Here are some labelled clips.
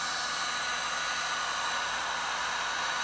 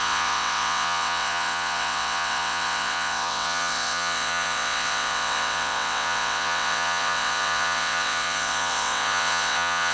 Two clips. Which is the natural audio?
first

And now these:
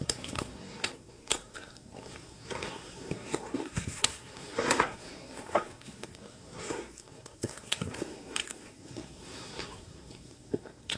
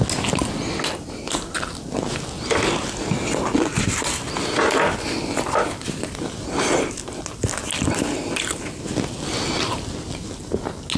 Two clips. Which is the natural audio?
second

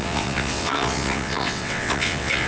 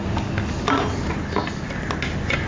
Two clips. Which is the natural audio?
second